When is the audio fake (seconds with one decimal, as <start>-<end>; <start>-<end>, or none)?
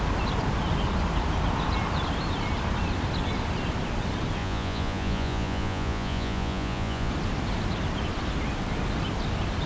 4.4-7.1